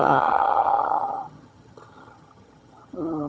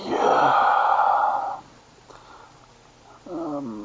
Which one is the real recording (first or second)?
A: second